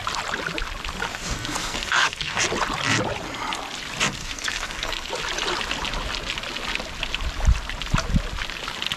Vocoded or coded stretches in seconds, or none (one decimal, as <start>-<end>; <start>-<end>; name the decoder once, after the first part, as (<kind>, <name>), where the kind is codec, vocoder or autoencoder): 1.1-2.4 (codec, SNAC); 4.2-5.1